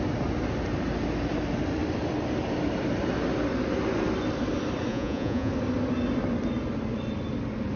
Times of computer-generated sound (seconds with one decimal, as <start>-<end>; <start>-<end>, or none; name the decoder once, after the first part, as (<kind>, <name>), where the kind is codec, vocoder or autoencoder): 4.9-5.5 (vocoder, Vocos)